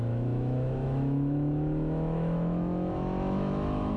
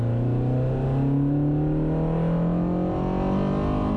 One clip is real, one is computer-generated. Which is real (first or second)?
second